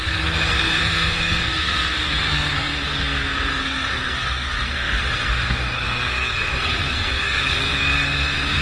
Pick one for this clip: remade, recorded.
remade